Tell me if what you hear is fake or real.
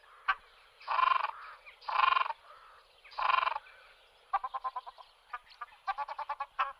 real